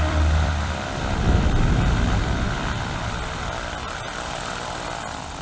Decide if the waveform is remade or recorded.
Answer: remade